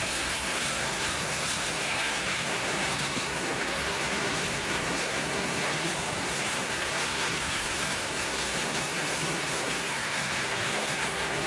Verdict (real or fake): fake